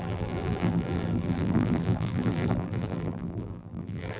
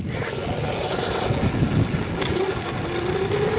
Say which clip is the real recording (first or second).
second